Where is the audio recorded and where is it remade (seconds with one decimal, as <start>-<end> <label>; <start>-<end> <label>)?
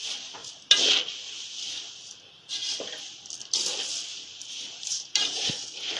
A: 0.0-4.1 recorded; 4.1-5.5 remade; 5.5-6.0 recorded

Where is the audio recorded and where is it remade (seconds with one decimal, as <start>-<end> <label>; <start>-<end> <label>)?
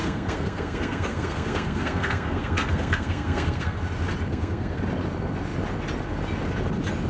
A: 0.0-3.8 remade; 3.8-4.3 recorded; 4.3-4.8 remade; 4.8-7.1 recorded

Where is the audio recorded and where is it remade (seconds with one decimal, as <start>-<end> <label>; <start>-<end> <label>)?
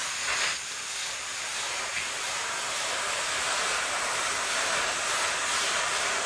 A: 0.0-1.3 recorded; 1.3-5.0 remade; 5.0-6.3 recorded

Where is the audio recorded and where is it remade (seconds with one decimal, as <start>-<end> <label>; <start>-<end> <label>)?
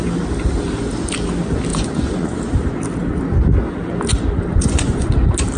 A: 0.0-1.7 recorded; 1.7-2.4 remade; 2.4-4.5 recorded; 4.5-5.1 remade; 5.1-5.6 recorded